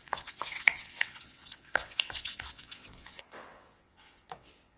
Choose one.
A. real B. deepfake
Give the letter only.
B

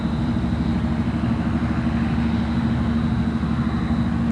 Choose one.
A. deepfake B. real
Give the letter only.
B